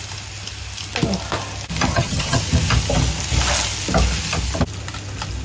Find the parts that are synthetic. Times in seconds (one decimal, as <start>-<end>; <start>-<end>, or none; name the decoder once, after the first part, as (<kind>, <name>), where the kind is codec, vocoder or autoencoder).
1.9-2.4 (vocoder, HiFi-GAN)